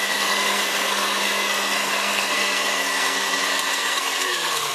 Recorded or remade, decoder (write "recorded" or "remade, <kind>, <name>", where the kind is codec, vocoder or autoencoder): remade, codec, SNAC